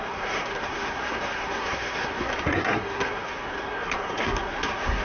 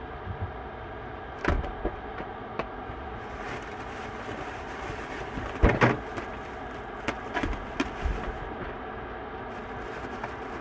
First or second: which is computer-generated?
first